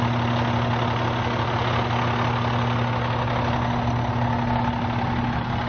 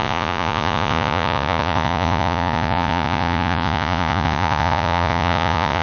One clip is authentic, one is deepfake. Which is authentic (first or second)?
first